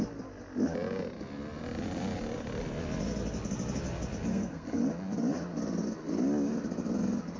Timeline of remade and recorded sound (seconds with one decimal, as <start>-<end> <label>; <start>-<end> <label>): 0.0-4.3 recorded; 4.3-4.8 remade; 4.8-7.4 recorded